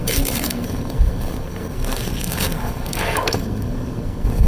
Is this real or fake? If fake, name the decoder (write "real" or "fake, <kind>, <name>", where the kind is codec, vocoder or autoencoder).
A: fake, codec, SNAC